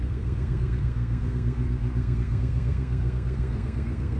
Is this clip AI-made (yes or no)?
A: yes